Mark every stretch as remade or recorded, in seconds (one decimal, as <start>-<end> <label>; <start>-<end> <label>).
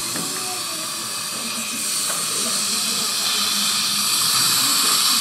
0.0-5.2 recorded